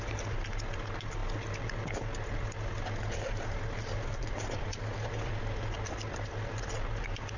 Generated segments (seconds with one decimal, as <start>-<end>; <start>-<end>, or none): none